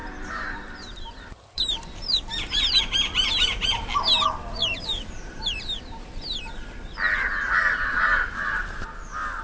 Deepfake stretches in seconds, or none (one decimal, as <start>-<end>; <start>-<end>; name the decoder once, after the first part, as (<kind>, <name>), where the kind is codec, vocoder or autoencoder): 0.0-2.8 (vocoder, BigVGAN v2); 4.6-8.3